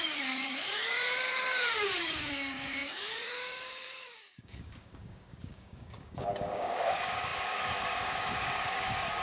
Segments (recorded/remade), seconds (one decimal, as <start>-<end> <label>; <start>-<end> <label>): 0.0-9.2 remade